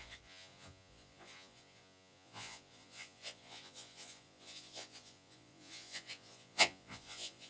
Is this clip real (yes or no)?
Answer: no